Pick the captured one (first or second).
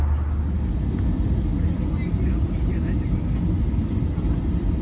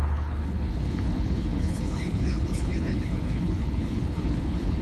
first